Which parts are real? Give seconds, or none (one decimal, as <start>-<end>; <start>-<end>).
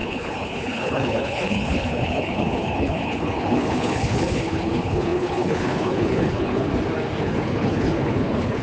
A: 6.7-7.2